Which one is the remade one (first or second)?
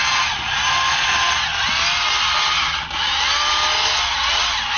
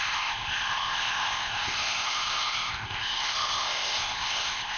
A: second